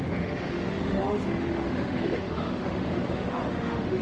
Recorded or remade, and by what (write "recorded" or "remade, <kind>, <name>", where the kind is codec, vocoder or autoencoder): remade, autoencoder, DAC-VAE